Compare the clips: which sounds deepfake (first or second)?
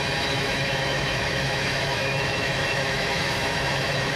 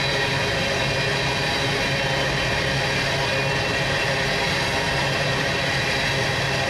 first